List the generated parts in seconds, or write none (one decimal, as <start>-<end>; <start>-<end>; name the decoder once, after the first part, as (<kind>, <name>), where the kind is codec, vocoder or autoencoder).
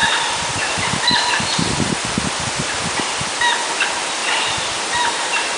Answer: 4.2-5.6 (vocoder, BigVGAN v2)